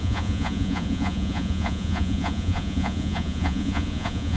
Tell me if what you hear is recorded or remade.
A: remade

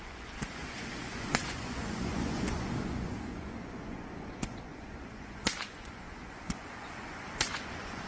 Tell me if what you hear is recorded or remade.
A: remade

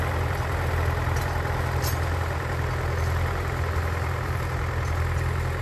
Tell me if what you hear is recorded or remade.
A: recorded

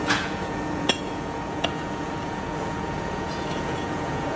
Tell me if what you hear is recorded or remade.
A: remade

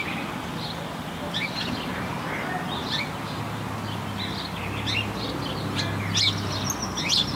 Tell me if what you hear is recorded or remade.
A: recorded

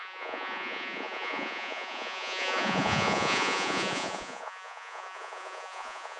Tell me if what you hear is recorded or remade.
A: remade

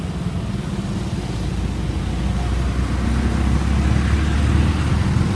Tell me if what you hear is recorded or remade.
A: recorded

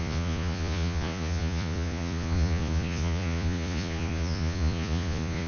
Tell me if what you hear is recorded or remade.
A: remade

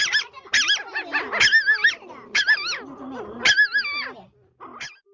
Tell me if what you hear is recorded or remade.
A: recorded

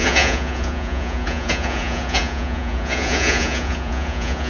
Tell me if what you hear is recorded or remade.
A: remade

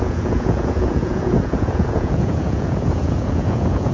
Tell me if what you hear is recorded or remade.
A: remade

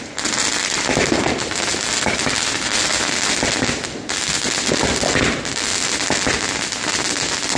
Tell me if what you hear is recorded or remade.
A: recorded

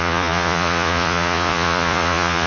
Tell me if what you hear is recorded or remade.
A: remade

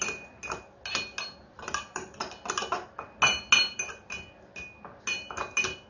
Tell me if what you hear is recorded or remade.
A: recorded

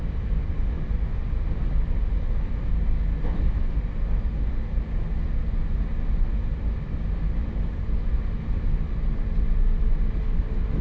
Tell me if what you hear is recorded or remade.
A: recorded